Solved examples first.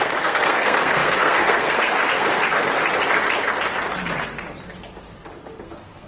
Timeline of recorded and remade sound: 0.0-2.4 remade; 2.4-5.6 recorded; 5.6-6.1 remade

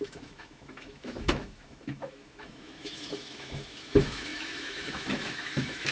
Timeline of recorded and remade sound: 0.0-5.9 remade

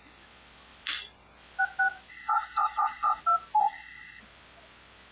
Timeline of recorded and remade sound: 0.0-2.1 recorded; 2.1-3.2 remade; 3.2-3.6 recorded; 3.6-4.2 remade; 4.2-5.1 recorded

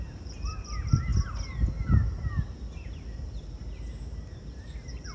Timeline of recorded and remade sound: 0.0-5.1 recorded

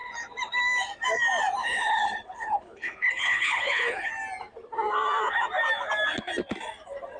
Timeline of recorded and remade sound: 0.0-1.6 recorded; 1.6-4.1 remade; 4.1-7.2 recorded